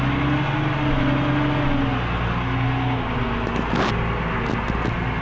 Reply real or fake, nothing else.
real